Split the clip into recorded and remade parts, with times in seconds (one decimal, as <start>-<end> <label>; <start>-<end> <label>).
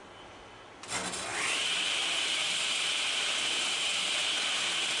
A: 0.0-1.3 recorded; 1.3-4.3 remade; 4.3-5.0 recorded